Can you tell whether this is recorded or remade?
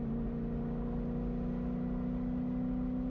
recorded